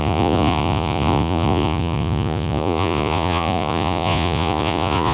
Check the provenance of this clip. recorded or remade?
remade